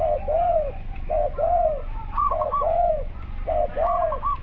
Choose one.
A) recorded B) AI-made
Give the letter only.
B